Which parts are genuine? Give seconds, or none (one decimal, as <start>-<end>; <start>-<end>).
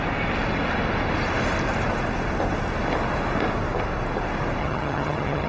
0.0-4.6